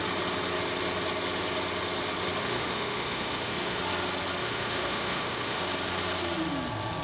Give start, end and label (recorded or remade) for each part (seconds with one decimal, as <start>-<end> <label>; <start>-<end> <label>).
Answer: 0.0-2.4 recorded; 2.4-3.8 remade; 3.8-4.4 recorded; 4.4-5.6 remade; 5.6-7.0 recorded